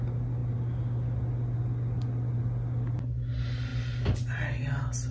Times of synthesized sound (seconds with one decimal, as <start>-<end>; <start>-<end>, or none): none